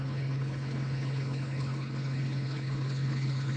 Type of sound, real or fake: fake